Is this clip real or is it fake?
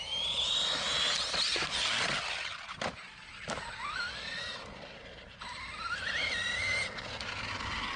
real